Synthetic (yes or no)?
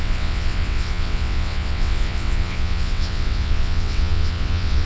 yes